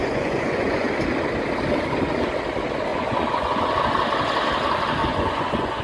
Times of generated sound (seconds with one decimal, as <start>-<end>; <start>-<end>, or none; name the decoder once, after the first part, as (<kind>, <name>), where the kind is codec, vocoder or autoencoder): 0.0-0.9 (vocoder, Vocos); 2.9-3.7; 5.0-5.8